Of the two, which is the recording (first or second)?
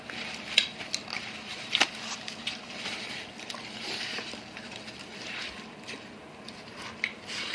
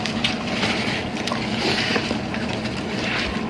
second